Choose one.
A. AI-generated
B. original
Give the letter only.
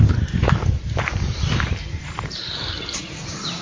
A